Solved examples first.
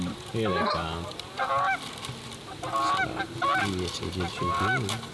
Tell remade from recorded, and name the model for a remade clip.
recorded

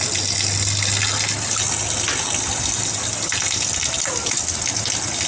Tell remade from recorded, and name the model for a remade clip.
recorded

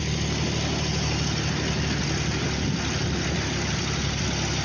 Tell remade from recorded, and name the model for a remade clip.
recorded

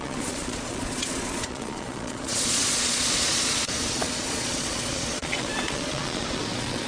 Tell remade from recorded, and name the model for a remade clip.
remade, vocoder, Vocos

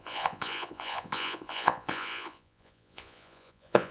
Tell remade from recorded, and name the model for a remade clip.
remade, vocoder, Vocos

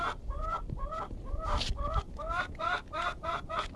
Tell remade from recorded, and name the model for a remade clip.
recorded